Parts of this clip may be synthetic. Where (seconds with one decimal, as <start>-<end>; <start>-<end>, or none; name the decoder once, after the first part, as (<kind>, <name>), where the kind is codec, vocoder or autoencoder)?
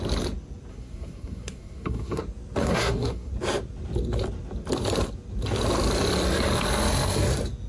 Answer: 0.7-2.2 (codec, SNAC); 2.6-3.3